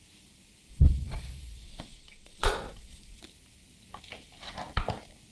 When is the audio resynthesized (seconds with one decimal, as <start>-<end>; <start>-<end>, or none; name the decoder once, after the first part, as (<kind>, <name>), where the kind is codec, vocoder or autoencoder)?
0.7-3.2 (vocoder, Vocos)